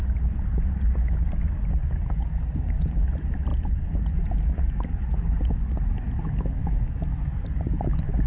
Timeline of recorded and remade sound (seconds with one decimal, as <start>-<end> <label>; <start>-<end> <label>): 0.0-6.6 recorded; 6.6-7.2 remade; 7.2-8.3 recorded